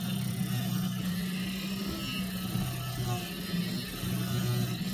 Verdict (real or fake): real